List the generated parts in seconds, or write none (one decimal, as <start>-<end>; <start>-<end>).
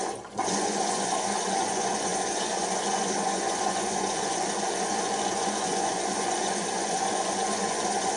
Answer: 0.0-8.2